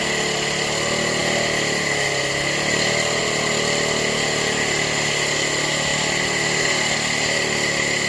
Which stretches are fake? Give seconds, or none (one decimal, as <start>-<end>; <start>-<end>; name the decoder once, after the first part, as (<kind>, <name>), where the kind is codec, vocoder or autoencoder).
none